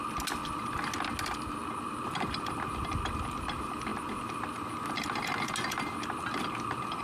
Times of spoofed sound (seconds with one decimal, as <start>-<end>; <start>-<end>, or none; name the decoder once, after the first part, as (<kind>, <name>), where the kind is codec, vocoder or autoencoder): none